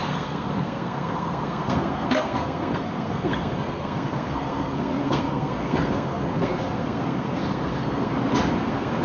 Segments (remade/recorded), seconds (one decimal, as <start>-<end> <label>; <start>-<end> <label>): 0.0-8.1 remade; 8.1-8.6 recorded; 8.6-9.0 remade